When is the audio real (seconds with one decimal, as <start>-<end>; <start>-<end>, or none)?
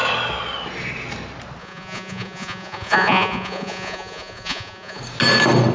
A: 0.0-1.6; 5.0-5.7